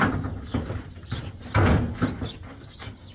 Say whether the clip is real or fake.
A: real